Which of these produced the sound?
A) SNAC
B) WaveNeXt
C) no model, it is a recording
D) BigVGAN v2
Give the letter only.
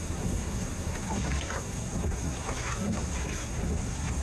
A